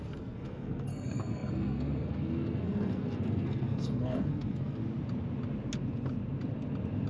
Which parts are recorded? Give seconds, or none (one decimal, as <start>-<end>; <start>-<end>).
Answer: 4.8-7.1